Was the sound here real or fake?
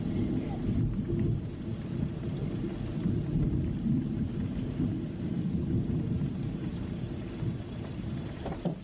fake